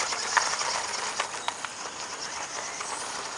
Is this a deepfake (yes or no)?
no